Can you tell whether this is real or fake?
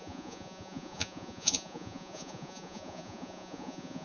fake